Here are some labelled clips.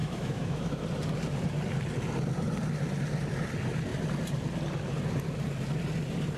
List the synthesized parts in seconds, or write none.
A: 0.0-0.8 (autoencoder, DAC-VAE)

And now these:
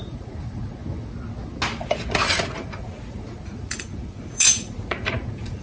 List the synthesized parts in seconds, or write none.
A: 0.0-0.8 (vocoder, Vocos); 2.3-5.6

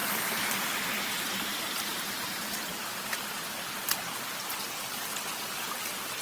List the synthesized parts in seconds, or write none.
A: 0.0-3.7 (vocoder, BigVGAN v2)